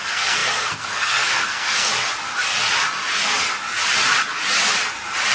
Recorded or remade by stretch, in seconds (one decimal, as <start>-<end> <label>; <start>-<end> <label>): 0.0-1.9 remade; 1.9-5.3 recorded